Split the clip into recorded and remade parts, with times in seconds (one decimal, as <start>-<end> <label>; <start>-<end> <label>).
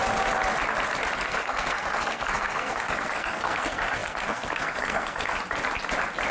0.0-1.3 recorded; 1.3-5.3 remade; 5.3-6.3 recorded